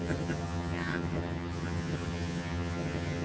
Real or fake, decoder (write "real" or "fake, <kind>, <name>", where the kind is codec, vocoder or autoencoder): fake, vocoder, HiFi-GAN